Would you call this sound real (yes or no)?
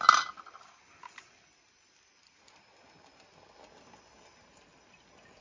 yes